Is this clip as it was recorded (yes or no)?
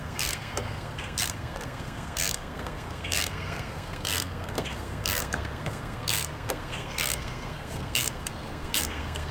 no